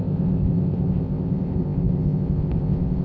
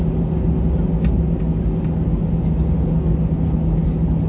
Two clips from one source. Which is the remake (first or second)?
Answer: first